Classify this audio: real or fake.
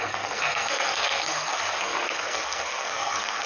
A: fake